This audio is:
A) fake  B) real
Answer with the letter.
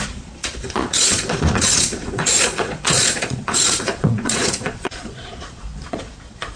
A